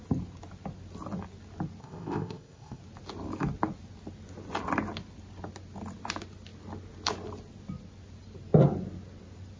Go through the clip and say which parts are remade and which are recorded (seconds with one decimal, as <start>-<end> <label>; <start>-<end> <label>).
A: 0.0-1.8 recorded; 1.8-2.8 remade; 2.8-9.6 recorded